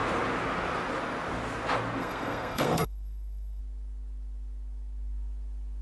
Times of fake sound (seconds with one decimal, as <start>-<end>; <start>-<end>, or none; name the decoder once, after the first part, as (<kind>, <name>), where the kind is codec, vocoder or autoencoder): 2.0-3.6 (codec, SNAC)